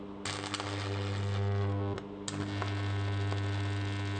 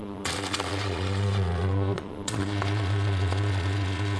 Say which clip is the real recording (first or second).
first